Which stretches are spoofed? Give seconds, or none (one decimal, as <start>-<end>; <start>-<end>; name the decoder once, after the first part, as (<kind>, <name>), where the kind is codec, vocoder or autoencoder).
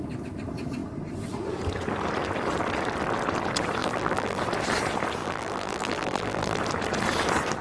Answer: 3.8-4.4 (vocoder, BigVGAN v2); 5.2-6.6